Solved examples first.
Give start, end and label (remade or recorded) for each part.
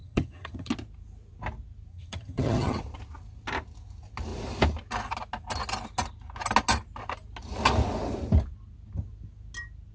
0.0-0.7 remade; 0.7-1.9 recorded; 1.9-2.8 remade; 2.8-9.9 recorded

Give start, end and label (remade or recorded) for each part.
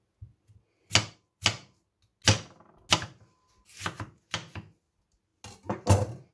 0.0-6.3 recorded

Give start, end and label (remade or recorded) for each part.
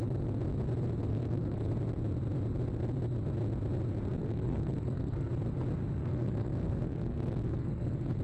0.0-1.1 recorded; 1.1-1.7 remade; 1.7-4.2 recorded; 4.2-5.3 remade; 5.3-6.0 recorded; 6.0-8.2 remade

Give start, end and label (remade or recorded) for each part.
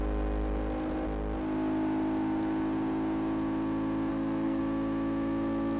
0.0-4.1 recorded; 4.1-4.6 remade; 4.6-5.8 recorded